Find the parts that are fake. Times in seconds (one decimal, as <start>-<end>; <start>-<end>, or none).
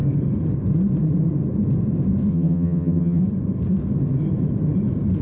2.3-3.2